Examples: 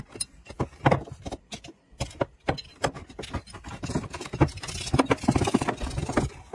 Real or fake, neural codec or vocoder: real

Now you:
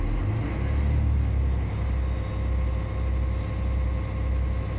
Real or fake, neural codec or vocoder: real